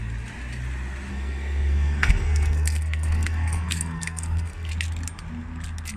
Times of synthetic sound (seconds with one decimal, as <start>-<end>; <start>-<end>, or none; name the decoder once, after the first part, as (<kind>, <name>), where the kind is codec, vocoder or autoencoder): 1.1-4.7 (codec, SNAC)